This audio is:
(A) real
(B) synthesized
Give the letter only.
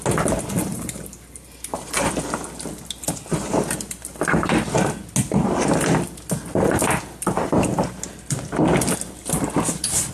A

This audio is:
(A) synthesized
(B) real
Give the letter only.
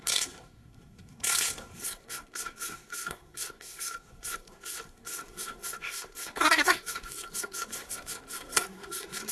A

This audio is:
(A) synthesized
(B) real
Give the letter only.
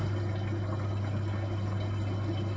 B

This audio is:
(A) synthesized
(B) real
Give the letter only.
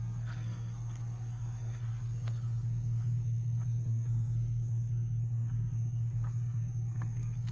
A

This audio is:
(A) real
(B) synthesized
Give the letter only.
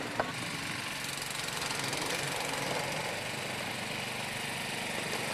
A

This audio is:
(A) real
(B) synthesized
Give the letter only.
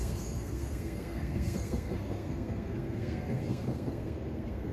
B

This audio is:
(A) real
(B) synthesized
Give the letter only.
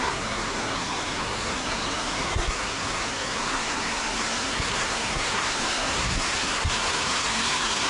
B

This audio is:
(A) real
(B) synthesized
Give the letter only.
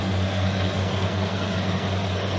B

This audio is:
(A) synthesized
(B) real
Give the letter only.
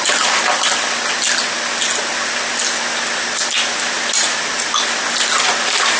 B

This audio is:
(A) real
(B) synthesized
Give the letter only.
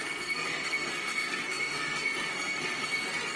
B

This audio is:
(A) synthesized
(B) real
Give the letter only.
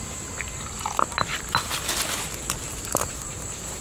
B